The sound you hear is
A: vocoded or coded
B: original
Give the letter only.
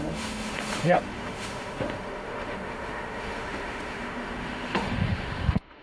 A